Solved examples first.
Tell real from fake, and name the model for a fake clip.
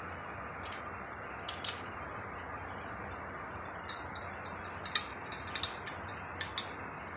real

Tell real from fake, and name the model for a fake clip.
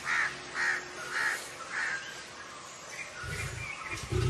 real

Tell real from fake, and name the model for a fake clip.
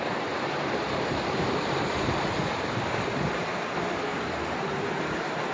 fake, vocoder, BigVGAN v2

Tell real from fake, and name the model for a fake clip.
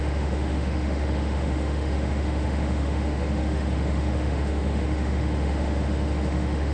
fake, autoencoder, DAC-VAE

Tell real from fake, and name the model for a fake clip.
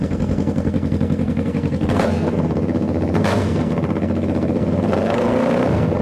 fake, codec, SNAC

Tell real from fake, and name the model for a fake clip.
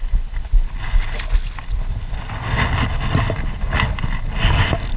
real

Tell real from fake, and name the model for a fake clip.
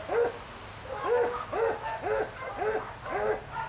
real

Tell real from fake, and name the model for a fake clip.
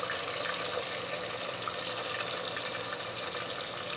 real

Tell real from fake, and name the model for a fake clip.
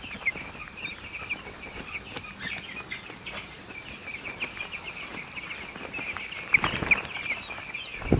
real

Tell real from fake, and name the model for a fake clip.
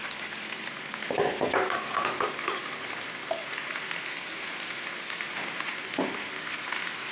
real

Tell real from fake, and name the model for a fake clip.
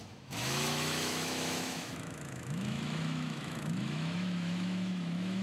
fake, autoencoder, DAC-VAE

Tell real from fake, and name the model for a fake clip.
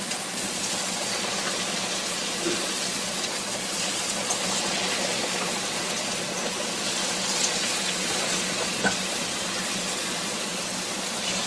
fake, vocoder, Vocos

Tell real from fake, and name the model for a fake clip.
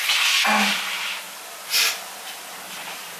real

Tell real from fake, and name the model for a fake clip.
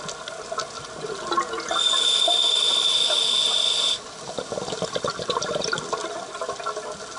real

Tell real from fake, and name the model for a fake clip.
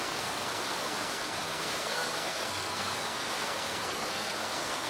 fake, codec, SNAC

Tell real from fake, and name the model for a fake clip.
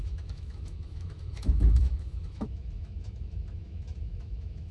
fake, autoencoder, DAC-VAE